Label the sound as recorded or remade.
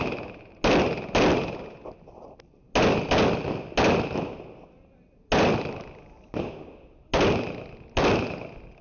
recorded